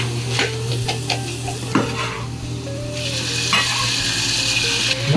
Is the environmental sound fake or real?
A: real